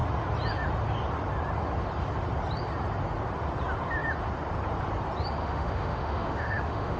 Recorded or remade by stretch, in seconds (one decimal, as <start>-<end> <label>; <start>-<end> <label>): 0.0-5.4 recorded; 5.4-7.0 remade